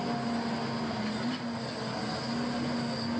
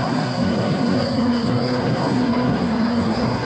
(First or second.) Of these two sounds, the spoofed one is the second